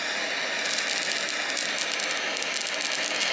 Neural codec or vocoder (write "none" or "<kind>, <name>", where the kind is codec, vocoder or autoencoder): none